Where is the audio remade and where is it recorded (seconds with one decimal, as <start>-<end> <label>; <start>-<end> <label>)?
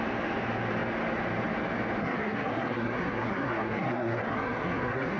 0.0-2.0 recorded; 2.0-5.2 remade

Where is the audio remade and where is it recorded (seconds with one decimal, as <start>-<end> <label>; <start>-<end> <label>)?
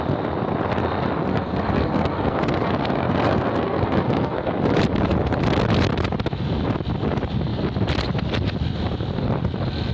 0.0-1.3 recorded; 1.3-4.5 remade; 4.5-9.9 recorded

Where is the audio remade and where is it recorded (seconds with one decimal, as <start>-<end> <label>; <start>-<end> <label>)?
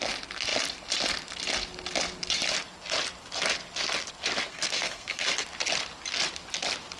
0.0-4.5 recorded; 4.5-5.3 remade; 5.3-7.0 recorded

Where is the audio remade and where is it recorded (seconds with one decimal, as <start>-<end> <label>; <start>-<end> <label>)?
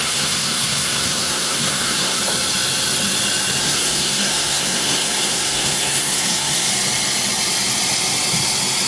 0.0-2.2 remade; 2.2-3.6 recorded; 3.6-6.7 remade; 6.7-8.9 recorded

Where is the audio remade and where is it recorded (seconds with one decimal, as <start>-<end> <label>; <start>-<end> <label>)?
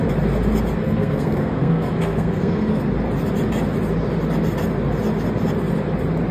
0.0-0.8 recorded; 0.8-2.8 remade; 2.8-6.3 recorded